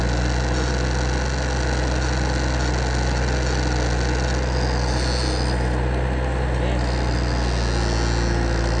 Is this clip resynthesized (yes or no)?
no